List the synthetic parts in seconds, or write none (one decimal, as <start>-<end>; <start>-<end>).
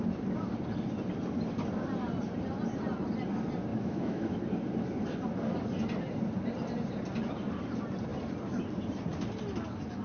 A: 3.7-4.4